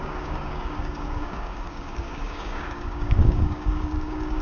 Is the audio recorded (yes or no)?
no